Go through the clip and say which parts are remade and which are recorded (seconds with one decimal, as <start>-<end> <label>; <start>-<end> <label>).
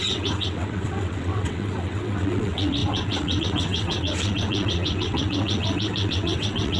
0.0-6.8 remade